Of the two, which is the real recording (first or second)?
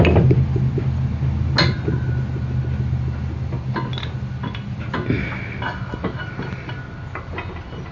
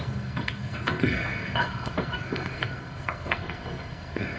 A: first